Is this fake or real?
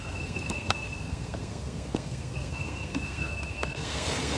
fake